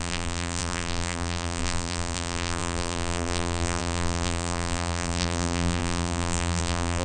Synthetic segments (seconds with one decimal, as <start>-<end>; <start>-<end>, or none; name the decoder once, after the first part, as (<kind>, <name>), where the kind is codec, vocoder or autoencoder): 0.0-7.0 (vocoder, BigVGAN v2)